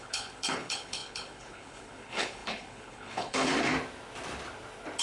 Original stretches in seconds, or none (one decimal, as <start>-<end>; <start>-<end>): 3.5-5.0